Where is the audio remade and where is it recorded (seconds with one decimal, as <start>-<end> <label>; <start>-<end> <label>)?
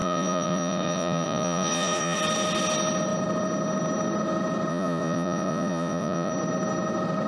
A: 0.0-2.2 remade; 2.2-4.7 recorded; 4.7-6.3 remade; 6.3-7.3 recorded